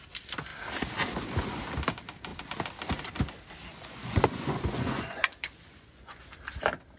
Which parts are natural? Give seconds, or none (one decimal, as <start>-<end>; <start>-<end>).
0.0-3.7; 6.2-7.0

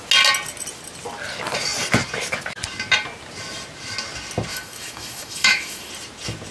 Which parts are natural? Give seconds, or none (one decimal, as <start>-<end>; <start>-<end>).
0.0-4.5; 5.9-6.5

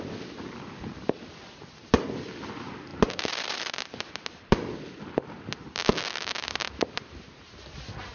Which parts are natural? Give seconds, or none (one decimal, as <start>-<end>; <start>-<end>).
0.0-2.9; 3.8-6.6; 7.5-8.1

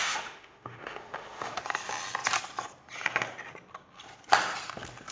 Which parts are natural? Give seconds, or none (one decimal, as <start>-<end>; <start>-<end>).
1.6-5.1

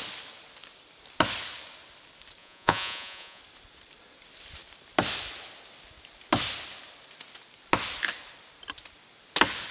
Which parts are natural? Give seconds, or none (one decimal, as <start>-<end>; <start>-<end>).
0.0-2.4; 3.4-9.7